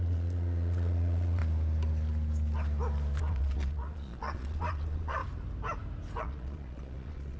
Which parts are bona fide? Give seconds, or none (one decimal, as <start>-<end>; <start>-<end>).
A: 1.4-3.2; 5.2-6.2